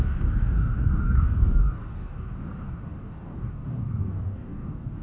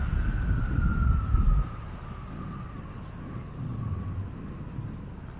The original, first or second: second